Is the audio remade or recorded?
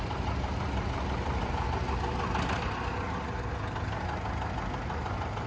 recorded